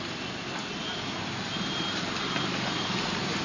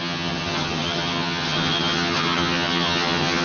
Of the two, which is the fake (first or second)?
second